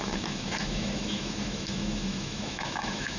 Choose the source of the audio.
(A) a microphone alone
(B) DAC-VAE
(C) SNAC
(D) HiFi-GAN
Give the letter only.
B